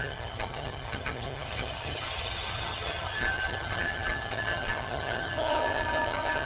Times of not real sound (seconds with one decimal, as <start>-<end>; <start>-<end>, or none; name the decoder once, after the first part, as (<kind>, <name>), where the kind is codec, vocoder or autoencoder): 0.0-6.5 (vocoder, HiFi-GAN)